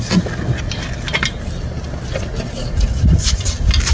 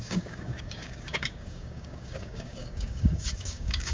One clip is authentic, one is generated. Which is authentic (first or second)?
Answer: first